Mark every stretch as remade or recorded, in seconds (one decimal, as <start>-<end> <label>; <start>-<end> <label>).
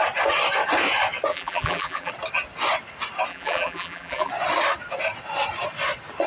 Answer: 0.0-1.3 recorded; 1.3-2.1 remade; 2.1-3.3 recorded; 3.3-4.3 remade; 4.3-6.3 recorded